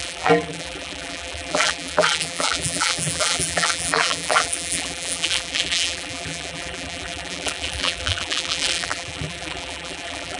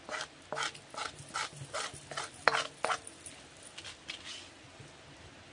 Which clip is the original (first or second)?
second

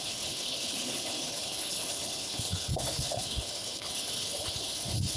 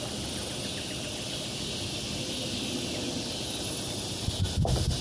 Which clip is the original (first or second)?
second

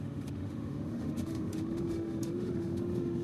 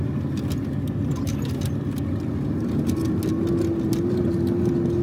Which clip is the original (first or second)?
second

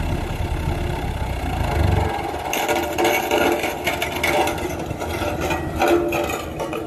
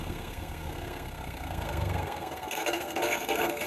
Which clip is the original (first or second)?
first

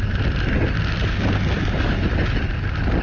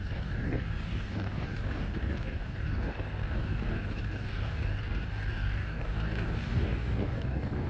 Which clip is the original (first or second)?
first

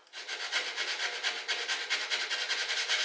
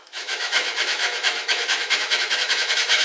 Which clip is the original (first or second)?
first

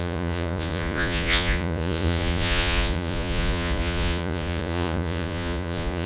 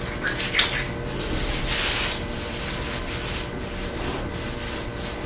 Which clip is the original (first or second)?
second